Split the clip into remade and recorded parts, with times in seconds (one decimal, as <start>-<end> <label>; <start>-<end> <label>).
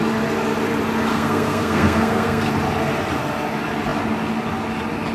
0.0-1.1 recorded; 1.1-2.5 remade; 2.5-5.1 recorded